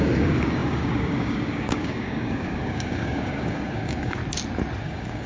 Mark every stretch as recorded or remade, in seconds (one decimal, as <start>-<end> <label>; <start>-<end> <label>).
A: 0.0-4.2 remade; 4.2-4.8 recorded; 4.8-5.3 remade